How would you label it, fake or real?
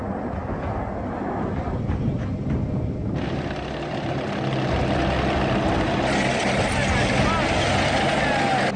real